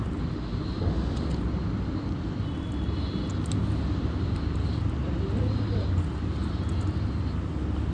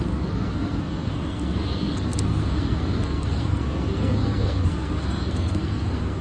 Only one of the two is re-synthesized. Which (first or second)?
second